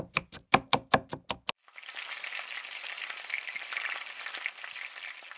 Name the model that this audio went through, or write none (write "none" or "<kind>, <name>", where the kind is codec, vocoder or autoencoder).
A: none